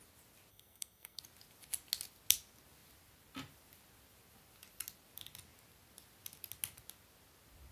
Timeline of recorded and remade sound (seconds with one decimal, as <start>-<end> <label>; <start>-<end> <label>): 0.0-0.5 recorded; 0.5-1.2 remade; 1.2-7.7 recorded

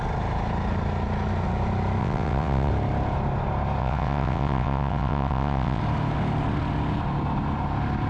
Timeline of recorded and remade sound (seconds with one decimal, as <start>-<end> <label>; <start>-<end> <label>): 0.0-2.0 recorded; 2.0-2.7 remade; 2.7-3.8 recorded; 3.8-5.8 remade; 5.8-8.1 recorded

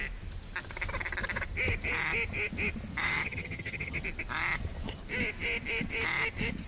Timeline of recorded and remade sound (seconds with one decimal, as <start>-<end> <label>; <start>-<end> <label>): 0.0-3.0 recorded; 3.0-4.0 remade; 4.0-6.7 recorded